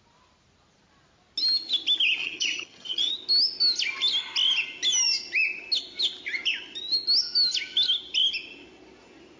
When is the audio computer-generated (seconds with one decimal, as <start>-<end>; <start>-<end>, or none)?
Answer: 2.2-3.1